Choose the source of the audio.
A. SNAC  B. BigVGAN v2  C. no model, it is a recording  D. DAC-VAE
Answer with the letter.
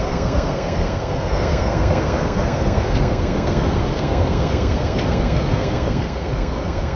A